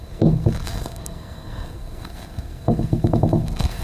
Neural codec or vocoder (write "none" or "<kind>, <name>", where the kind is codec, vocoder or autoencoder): codec, SNAC